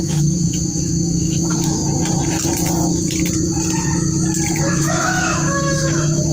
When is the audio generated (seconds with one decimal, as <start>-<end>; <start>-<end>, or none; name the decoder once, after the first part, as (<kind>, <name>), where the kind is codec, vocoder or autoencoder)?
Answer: 0.0-1.8 (autoencoder, DAC-VAE); 4.7-6.3